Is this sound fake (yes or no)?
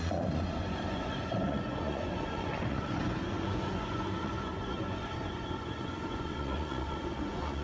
yes